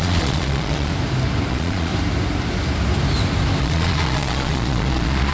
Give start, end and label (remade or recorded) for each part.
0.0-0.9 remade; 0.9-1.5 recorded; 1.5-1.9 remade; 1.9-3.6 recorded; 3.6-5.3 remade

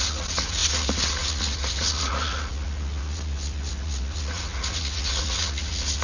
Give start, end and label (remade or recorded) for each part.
0.0-6.0 remade